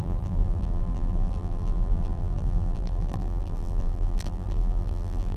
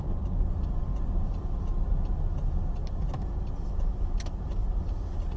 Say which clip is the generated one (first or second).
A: first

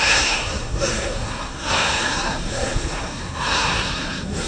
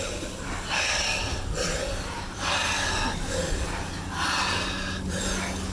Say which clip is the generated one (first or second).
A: first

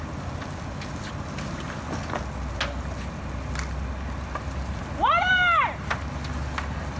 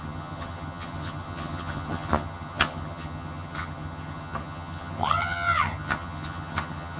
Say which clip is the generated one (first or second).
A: second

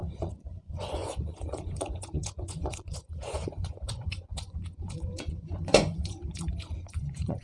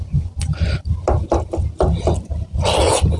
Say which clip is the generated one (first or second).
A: first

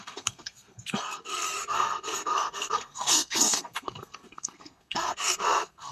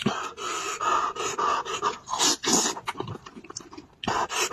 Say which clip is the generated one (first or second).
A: first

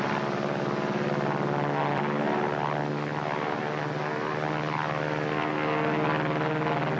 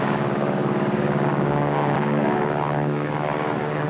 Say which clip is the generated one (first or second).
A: second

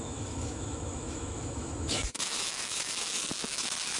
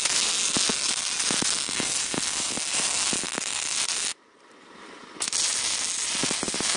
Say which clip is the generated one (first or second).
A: first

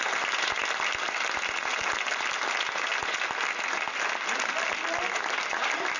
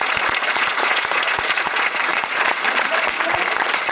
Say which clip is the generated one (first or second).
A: second